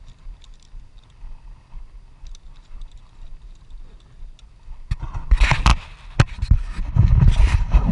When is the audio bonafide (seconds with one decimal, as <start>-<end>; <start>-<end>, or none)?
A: 0.0-7.9